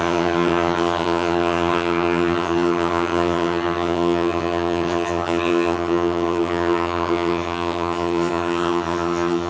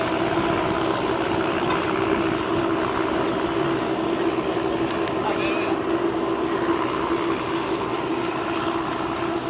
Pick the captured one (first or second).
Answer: second